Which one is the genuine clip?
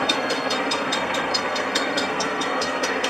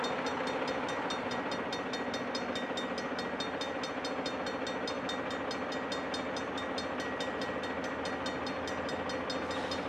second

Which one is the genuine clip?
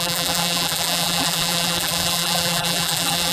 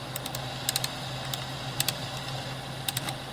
second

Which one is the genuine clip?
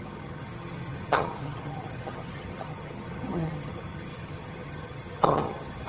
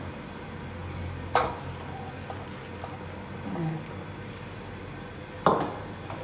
second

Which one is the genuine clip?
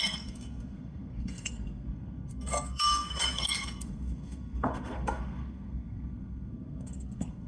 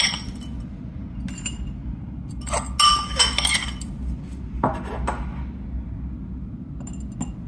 second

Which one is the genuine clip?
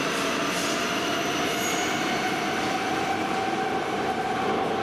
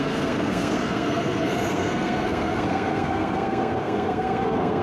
first